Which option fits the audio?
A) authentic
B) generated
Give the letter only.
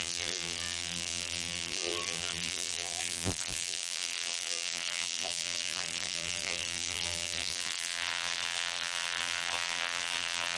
B